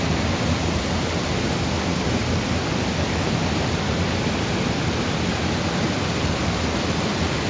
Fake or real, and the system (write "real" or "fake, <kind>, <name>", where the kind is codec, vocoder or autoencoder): real